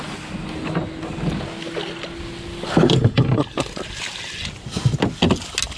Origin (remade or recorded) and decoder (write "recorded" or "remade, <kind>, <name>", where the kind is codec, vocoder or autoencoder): recorded